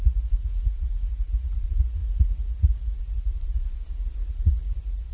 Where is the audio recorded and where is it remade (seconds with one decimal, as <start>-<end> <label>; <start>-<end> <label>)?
0.0-3.6 remade; 3.6-4.3 recorded; 4.3-5.1 remade